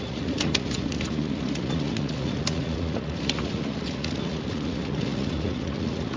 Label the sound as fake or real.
fake